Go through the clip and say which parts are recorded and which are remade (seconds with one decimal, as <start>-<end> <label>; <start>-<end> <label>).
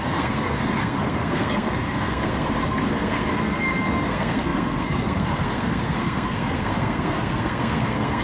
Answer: 0.0-8.2 remade